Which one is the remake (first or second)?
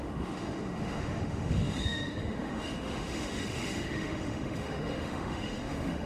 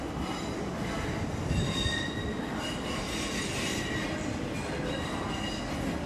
first